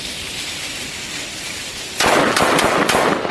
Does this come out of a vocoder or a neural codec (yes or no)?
no